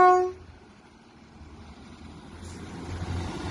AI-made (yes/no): no